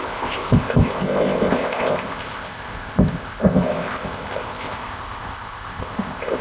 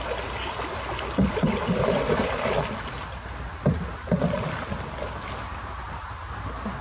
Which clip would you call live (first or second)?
second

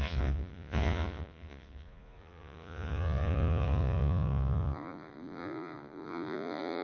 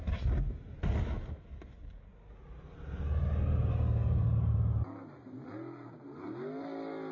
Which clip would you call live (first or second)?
second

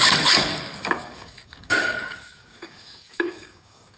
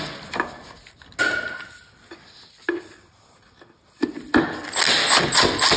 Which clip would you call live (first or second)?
second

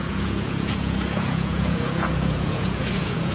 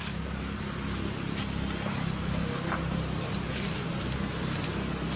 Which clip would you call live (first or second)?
second